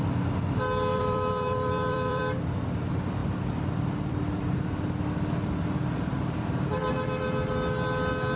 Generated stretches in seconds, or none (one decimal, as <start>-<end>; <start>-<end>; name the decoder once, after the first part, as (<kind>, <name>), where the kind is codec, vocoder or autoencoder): 0.9-2.2 (vocoder, BigVGAN v2); 3.2-4.7